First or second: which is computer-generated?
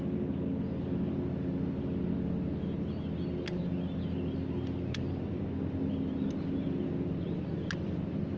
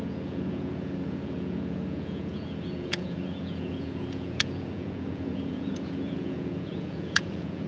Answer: second